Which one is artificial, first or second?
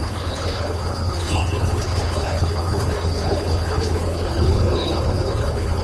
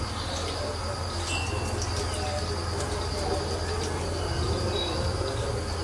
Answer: first